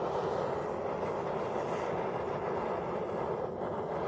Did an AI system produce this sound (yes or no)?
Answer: no